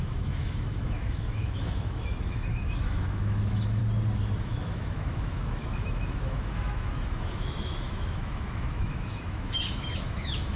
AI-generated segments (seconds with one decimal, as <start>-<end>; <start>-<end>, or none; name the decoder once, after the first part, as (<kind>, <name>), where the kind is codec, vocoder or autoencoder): 0.0-3.8 (autoencoder, DAC-VAE); 4.4-10.6